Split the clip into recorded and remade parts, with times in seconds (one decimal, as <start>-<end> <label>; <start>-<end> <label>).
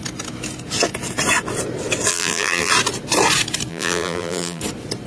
0.0-2.1 recorded; 2.1-2.7 remade; 2.7-3.7 recorded; 3.7-4.6 remade; 4.6-5.1 recorded